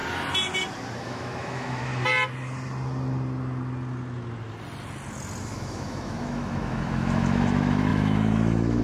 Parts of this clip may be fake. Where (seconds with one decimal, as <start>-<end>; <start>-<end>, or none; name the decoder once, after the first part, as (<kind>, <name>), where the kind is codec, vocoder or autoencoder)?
0.9-1.9 (autoencoder, DAC-VAE); 5.4-8.8